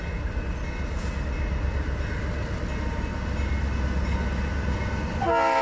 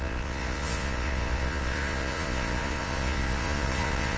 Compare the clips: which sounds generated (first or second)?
second